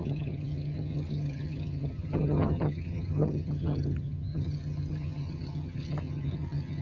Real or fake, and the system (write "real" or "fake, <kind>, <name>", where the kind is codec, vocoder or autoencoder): fake, vocoder, HiFi-GAN